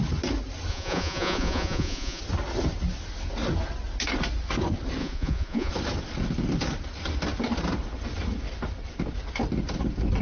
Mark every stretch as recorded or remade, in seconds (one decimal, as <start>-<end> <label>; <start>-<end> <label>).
0.0-0.7 recorded; 0.7-2.2 remade; 2.2-5.0 recorded; 5.0-5.7 remade; 5.7-10.2 recorded